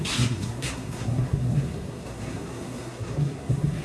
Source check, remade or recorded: remade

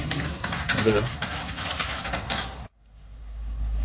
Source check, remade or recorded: remade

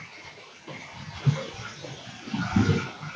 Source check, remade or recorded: recorded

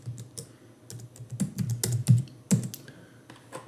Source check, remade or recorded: recorded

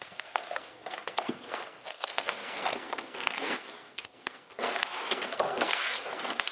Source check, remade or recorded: remade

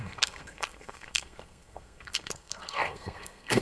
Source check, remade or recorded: remade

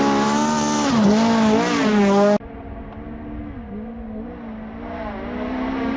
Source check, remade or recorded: recorded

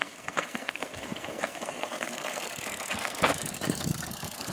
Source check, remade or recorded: remade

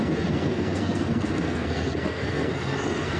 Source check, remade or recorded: remade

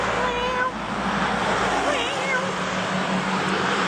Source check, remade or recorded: recorded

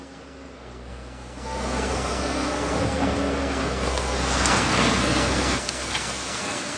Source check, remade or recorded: remade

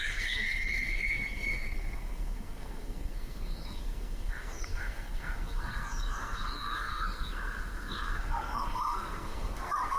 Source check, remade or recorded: remade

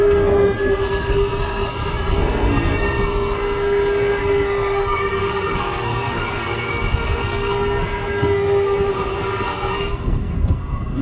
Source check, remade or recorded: remade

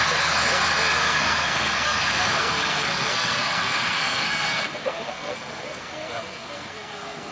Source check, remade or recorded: remade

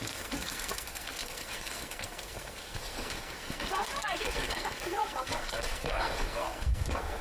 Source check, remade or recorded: remade